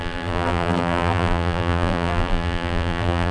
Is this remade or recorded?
remade